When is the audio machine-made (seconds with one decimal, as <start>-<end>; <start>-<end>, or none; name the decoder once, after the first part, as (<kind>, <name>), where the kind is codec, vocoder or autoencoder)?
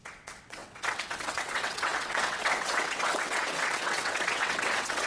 0.0-5.1 (vocoder, WaveNeXt)